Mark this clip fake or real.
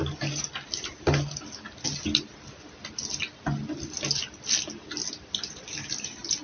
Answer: real